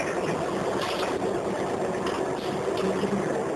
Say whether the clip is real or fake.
real